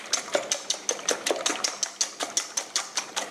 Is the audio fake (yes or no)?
no